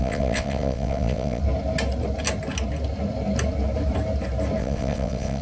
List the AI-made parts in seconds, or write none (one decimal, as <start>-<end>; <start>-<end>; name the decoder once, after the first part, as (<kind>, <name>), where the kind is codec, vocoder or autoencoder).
0.0-1.4 (vocoder, WaveNeXt); 4.6-5.4